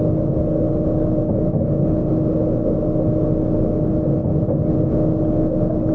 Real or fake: real